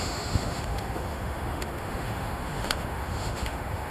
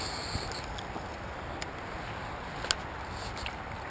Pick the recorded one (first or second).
second